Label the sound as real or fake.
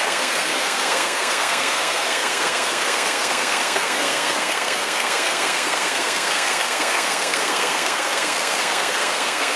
fake